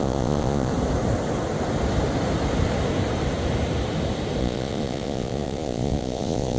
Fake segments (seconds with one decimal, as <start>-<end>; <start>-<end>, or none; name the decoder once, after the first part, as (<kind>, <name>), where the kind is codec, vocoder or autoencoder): 0.0-0.7 (vocoder, Vocos); 4.4-6.6